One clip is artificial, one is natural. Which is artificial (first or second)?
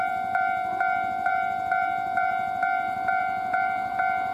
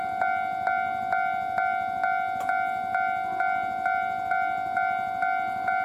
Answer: first